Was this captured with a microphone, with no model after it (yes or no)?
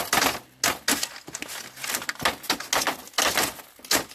yes